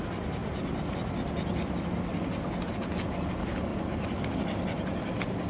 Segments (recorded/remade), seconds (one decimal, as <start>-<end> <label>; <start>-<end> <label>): 0.0-3.7 recorded; 3.7-5.1 remade; 5.1-5.5 recorded